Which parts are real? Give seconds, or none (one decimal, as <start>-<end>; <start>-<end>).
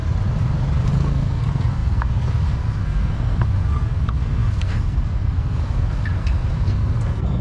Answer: 0.0-0.9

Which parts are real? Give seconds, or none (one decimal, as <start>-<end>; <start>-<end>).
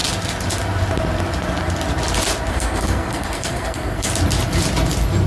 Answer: 0.0-2.5; 4.1-5.3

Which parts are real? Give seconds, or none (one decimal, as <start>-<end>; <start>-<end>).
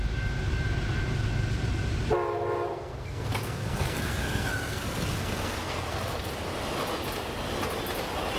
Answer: 0.0-2.7; 6.3-8.4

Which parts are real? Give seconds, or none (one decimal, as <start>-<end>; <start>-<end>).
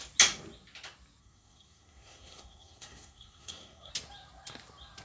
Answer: 0.0-1.2; 3.9-5.0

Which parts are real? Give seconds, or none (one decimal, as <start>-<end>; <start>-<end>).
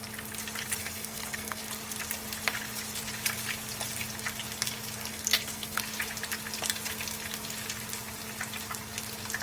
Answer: 0.0-0.8; 1.6-5.1; 5.8-9.4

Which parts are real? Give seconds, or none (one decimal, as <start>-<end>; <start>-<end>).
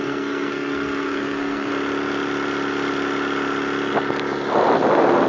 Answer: 1.7-5.3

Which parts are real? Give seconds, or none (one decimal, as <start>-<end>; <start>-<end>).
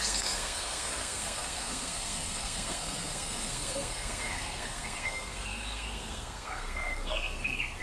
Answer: none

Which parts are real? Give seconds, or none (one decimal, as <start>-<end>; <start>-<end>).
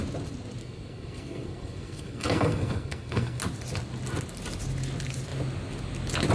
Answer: 0.0-0.6; 3.4-6.3